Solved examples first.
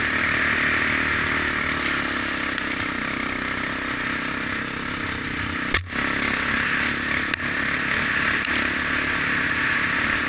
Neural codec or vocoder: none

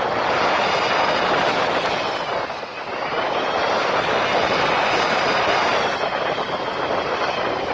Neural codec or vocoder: none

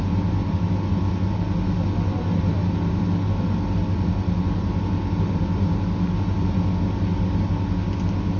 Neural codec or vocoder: none